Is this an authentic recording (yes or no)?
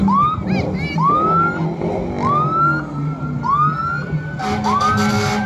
yes